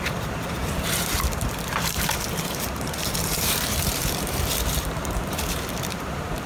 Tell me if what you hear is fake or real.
fake